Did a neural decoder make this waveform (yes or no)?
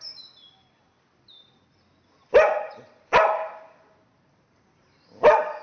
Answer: no